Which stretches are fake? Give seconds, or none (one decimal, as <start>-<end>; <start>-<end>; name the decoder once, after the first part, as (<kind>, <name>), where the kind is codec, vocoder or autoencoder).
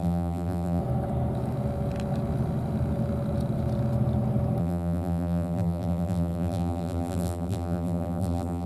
0.0-0.8 (vocoder, BigVGAN v2); 4.6-8.7